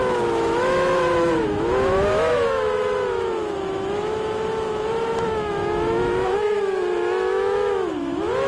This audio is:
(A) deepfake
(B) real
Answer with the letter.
A